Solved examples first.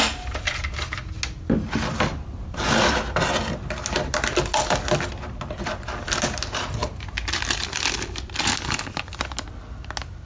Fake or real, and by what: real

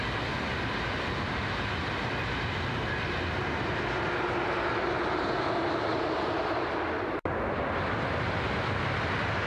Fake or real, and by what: real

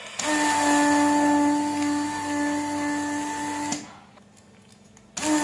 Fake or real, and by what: real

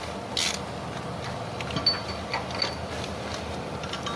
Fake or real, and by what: real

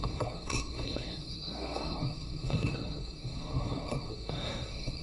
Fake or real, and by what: fake, codec, SNAC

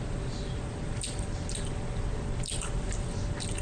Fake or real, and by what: real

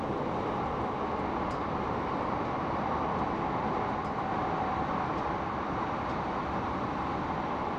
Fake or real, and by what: fake, vocoder, BigVGAN v2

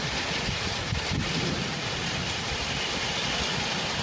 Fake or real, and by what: real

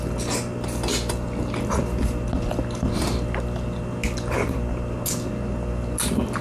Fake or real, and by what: real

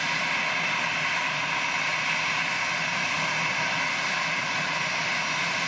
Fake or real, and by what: real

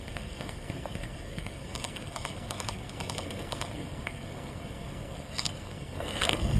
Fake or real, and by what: fake, codec, SNAC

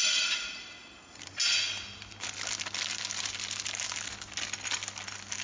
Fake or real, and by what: real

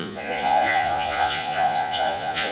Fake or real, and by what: fake, vocoder, Vocos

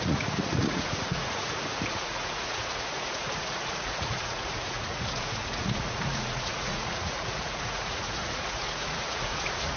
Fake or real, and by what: fake, vocoder, Vocos